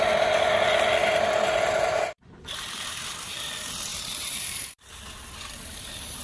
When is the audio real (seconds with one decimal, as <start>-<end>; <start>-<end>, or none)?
0.0-1.0; 3.4-3.9